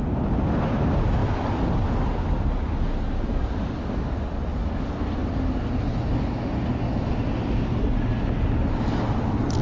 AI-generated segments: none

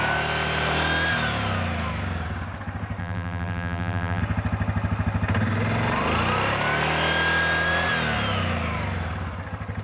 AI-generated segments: 3.0-4.2 (vocoder, BigVGAN v2)

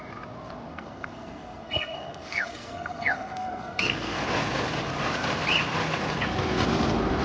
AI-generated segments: 0.7-4.2 (codec, SNAC)

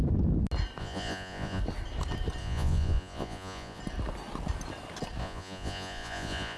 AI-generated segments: 0.8-1.6 (vocoder, Vocos); 2.4-3.8; 5.2-6.6

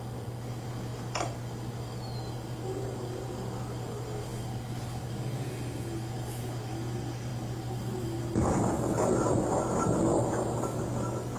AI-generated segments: none